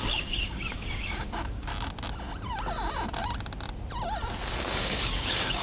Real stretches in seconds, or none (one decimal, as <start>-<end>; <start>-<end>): 1.7-4.6